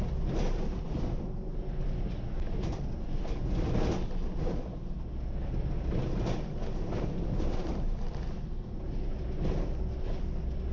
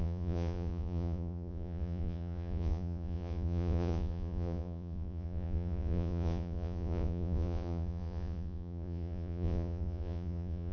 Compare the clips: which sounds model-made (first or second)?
second